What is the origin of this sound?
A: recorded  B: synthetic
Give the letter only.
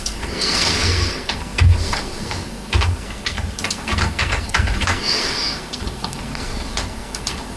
B